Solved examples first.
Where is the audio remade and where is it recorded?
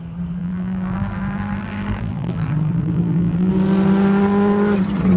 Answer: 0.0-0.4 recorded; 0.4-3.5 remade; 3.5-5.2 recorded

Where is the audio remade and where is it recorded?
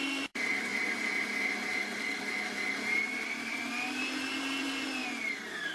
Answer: 0.0-5.0 remade; 5.0-5.7 recorded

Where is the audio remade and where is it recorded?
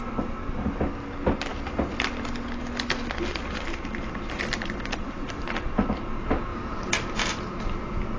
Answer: 0.0-6.5 recorded; 6.5-7.2 remade; 7.2-8.2 recorded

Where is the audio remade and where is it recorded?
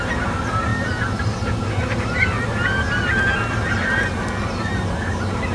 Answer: 0.0-5.5 recorded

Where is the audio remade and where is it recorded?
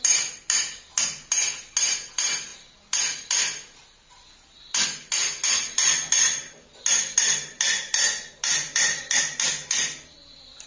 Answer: 0.0-8.5 recorded; 8.5-9.2 remade; 9.2-10.7 recorded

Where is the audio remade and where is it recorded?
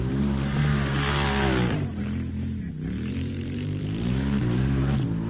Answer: 0.0-0.6 remade; 0.6-3.1 recorded; 3.1-5.3 remade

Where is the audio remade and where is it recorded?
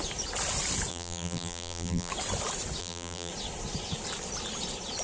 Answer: 0.0-0.9 recorded; 0.9-2.1 remade; 2.1-2.8 recorded; 2.8-3.3 remade; 3.3-5.0 recorded